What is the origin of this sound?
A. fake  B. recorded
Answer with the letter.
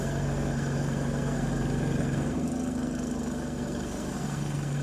A